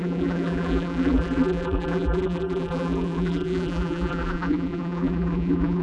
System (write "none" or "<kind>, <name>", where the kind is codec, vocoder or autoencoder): vocoder, BigVGAN v2